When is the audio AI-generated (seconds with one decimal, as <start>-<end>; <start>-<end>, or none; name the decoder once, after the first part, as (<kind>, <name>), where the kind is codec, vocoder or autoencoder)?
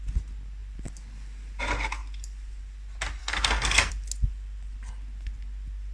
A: 3.2-3.9 (codec, SNAC)